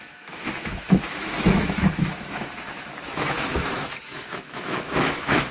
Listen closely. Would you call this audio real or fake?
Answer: fake